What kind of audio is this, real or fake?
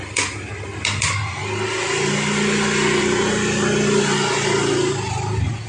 real